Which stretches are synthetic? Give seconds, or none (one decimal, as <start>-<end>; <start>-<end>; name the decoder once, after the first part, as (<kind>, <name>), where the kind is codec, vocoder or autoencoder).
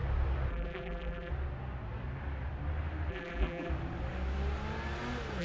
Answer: 0.5-1.3 (vocoder, BigVGAN v2); 3.1-3.7